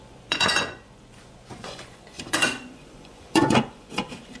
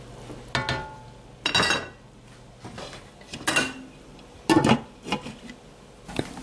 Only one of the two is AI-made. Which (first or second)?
first